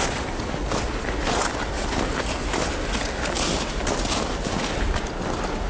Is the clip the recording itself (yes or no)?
yes